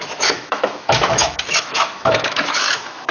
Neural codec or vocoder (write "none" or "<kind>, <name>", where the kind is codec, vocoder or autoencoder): autoencoder, DAC-VAE